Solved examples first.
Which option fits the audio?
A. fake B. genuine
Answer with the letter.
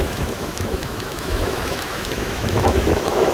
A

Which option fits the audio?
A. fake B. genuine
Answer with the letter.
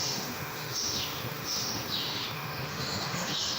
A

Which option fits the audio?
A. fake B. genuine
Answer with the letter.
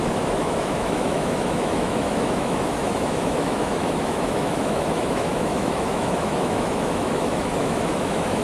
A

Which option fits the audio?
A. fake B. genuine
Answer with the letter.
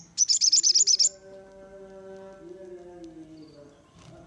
B